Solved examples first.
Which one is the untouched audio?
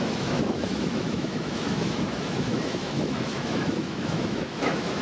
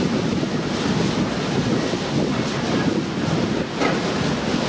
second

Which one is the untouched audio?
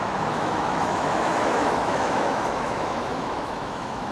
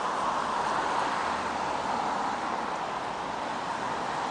second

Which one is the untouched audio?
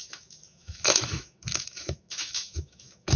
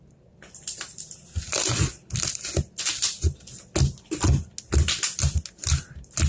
second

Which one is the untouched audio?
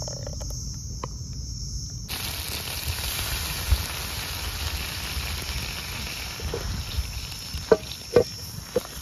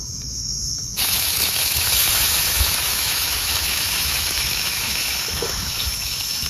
first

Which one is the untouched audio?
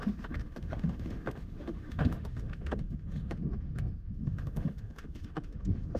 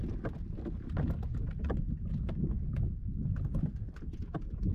second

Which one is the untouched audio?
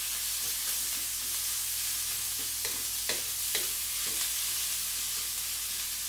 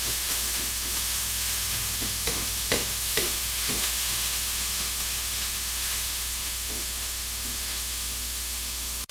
first